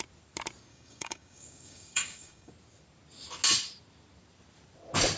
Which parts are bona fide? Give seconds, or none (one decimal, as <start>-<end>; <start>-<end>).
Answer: 0.0-0.7; 2.5-5.2